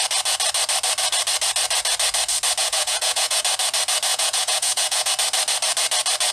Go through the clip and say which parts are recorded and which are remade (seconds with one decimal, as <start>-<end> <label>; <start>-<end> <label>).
0.0-2.6 recorded; 2.6-3.4 remade; 3.4-4.1 recorded; 4.1-5.1 remade; 5.1-6.3 recorded